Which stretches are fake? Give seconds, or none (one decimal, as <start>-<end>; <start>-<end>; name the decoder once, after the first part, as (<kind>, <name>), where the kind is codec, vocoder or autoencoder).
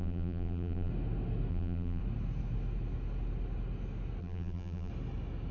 0.0-0.9 (vocoder, BigVGAN v2); 1.5-2.0; 4.2-4.9